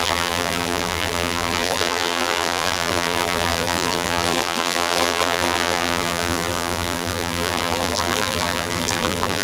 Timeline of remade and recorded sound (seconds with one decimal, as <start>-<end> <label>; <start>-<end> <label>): 0.0-9.4 remade